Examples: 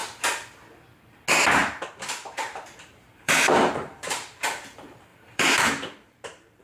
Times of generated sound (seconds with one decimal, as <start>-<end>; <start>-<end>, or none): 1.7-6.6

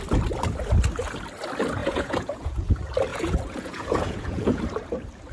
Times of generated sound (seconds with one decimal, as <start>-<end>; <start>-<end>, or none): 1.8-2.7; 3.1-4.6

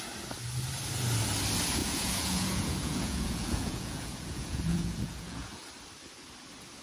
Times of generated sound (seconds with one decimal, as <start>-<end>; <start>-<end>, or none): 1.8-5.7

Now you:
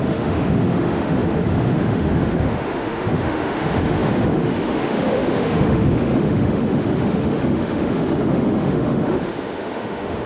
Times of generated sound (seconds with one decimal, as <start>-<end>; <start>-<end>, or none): 0.0-10.3

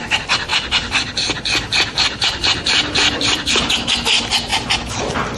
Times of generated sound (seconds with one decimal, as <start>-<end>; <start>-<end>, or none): 0.5-3.7; 4.5-5.0

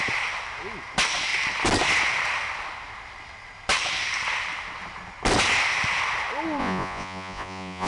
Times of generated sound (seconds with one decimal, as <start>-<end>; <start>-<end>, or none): 6.6-7.9

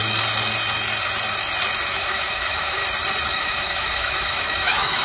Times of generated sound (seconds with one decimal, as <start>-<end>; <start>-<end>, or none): 1.9-2.8; 3.3-5.0

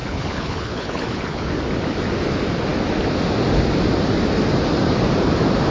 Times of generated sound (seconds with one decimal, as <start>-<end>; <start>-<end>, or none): 0.0-1.5